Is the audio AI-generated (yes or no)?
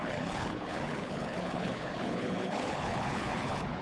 yes